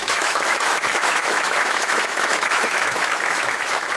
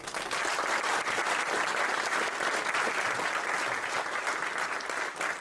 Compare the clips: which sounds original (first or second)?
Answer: second